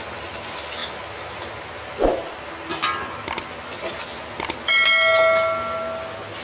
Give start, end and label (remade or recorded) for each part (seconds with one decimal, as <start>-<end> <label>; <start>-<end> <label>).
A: 0.0-6.4 recorded